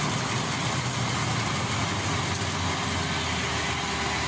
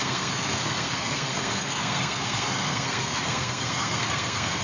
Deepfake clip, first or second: second